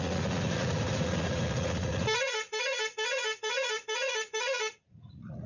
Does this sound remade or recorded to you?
remade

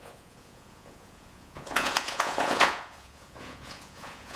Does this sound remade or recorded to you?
remade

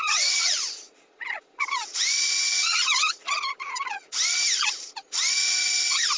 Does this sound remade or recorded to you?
remade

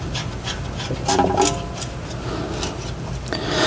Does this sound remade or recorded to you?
recorded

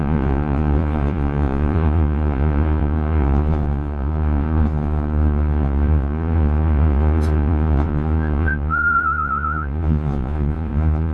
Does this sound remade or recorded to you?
remade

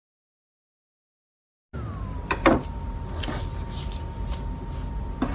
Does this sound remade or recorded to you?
recorded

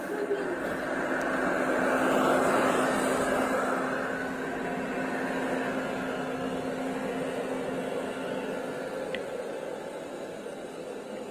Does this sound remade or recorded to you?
recorded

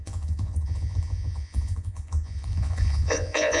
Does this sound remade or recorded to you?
remade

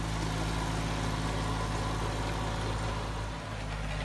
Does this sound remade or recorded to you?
recorded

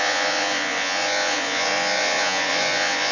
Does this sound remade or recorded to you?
remade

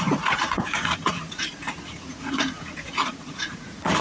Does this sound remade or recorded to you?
remade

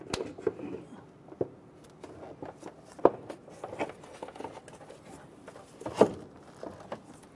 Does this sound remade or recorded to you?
recorded